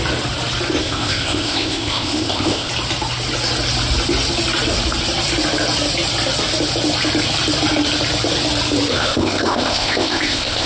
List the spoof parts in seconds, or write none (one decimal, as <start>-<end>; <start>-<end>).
0.8-2.7; 8.9-10.7

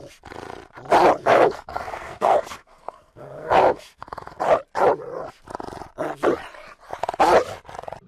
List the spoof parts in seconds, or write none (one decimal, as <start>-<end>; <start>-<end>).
1.2-4.4

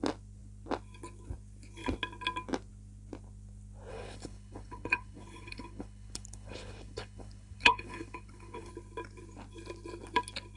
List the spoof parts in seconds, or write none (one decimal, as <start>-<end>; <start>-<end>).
3.9-8.7

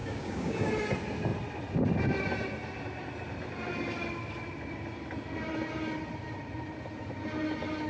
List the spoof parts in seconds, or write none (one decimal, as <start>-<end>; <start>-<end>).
0.0-0.7

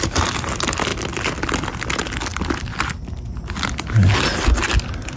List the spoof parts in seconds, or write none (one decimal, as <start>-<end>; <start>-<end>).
none